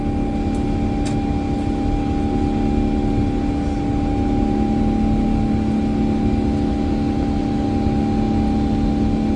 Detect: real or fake real